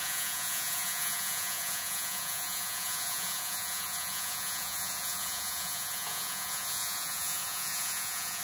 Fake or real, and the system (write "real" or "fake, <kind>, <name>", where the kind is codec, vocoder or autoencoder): fake, vocoder, Vocos